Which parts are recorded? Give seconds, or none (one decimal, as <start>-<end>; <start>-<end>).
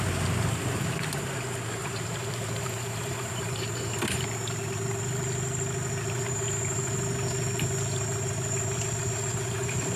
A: 0.0-1.8; 3.9-10.0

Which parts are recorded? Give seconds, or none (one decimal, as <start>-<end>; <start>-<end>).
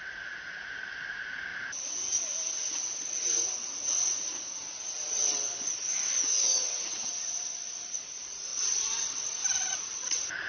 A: 1.5-3.0; 5.2-5.9